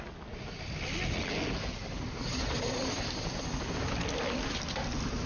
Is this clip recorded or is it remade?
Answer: recorded